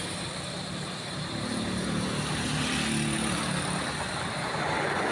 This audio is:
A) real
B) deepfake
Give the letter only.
A